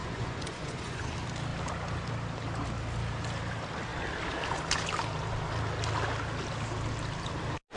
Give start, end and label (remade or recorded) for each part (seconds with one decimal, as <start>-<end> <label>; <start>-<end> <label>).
0.0-1.1 remade; 1.1-7.8 recorded